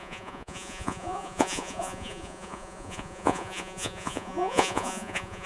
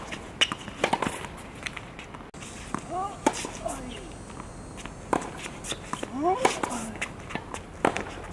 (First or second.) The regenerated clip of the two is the first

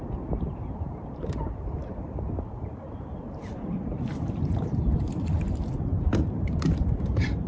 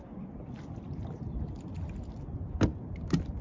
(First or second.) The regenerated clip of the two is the first